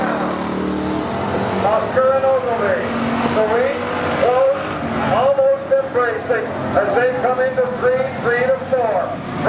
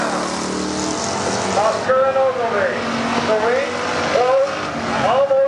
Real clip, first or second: second